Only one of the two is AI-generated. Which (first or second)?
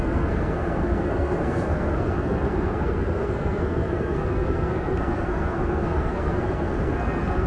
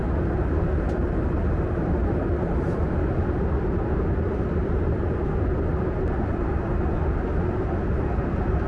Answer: first